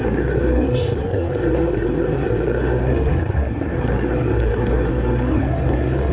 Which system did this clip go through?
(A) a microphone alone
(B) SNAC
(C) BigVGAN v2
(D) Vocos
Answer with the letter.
B